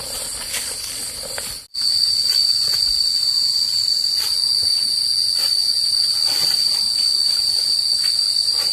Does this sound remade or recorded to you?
recorded